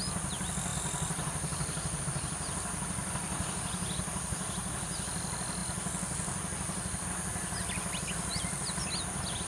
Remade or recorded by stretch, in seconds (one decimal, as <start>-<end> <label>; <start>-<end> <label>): 0.0-9.5 recorded